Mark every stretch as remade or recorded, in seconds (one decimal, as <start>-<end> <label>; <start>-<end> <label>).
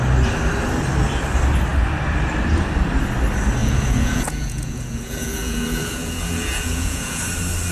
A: 0.0-3.6 recorded; 3.6-7.2 remade; 7.2-7.7 recorded